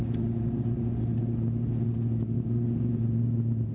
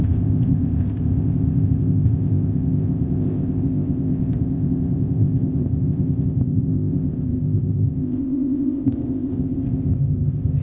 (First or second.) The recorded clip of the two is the first